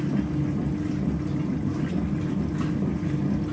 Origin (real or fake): real